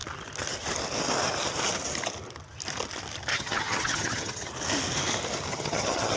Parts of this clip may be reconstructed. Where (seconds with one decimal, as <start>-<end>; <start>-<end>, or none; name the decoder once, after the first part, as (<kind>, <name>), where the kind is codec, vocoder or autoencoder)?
3.3-4.5 (vocoder, HiFi-GAN); 5.5-6.2